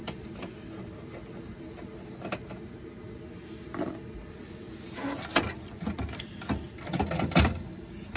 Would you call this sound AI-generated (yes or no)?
no